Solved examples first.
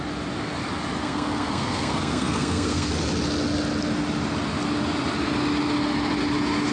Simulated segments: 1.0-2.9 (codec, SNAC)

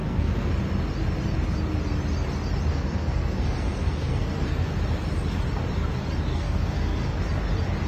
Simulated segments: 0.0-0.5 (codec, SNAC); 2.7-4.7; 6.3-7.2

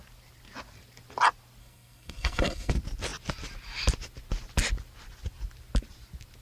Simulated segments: 1.6-2.7 (codec, SNAC)

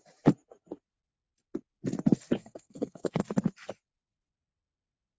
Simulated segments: 2.4-3.2 (codec, SNAC)

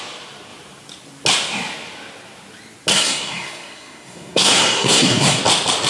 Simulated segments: 2.9-5.4 (codec, SNAC)